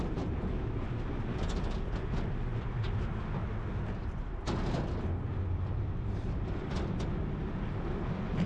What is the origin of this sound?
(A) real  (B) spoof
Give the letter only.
A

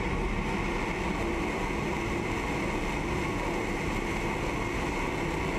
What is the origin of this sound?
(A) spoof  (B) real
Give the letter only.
B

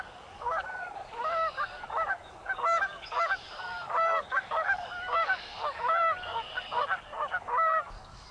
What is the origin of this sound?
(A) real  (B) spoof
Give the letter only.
B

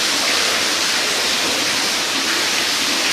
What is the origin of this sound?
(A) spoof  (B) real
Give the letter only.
A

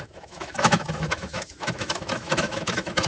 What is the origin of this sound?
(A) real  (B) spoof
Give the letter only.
B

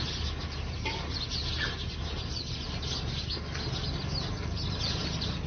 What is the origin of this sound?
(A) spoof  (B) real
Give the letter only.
B